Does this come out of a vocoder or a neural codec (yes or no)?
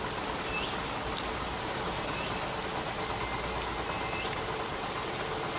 no